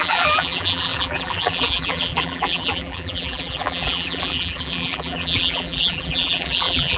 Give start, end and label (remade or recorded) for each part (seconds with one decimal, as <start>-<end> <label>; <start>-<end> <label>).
0.0-7.0 remade

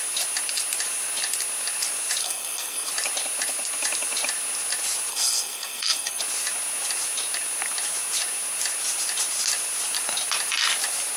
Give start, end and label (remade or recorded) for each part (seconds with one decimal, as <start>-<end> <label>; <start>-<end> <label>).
0.0-2.2 recorded; 2.2-2.9 remade; 2.9-5.1 recorded; 5.1-6.2 remade; 6.2-11.2 recorded

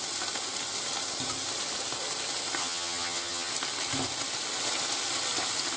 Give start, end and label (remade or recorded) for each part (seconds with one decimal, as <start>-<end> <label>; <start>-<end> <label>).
0.0-2.6 recorded; 2.6-3.5 remade; 3.5-5.8 recorded

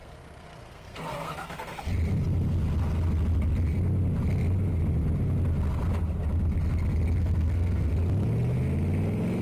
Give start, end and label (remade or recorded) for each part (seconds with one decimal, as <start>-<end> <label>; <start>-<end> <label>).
0.0-1.9 remade; 1.9-7.2 recorded; 7.2-7.9 remade; 7.9-9.4 recorded

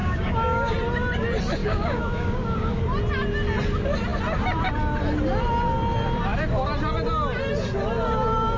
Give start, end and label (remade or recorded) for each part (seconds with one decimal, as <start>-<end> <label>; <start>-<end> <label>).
0.0-0.7 remade; 0.7-1.6 recorded; 1.6-2.8 remade; 2.8-8.6 recorded

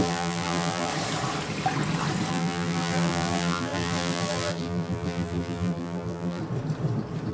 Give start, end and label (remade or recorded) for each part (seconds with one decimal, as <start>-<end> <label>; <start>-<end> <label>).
0.0-0.9 remade; 0.9-2.3 recorded; 2.3-6.4 remade; 6.4-7.3 recorded